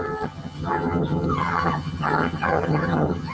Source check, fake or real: fake